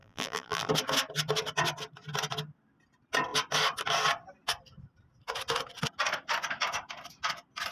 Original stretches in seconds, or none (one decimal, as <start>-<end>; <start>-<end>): 0.7-7.7